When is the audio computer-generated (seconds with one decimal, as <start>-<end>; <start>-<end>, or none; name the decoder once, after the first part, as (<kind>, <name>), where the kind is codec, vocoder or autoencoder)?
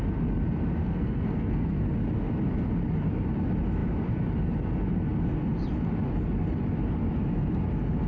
0.8-1.8 (codec, SNAC)